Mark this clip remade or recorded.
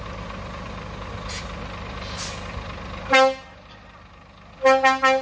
recorded